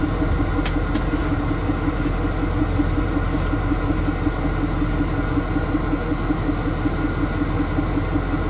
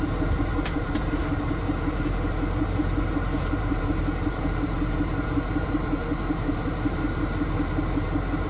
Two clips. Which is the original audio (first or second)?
first